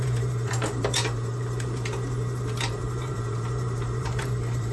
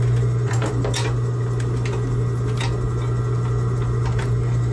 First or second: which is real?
second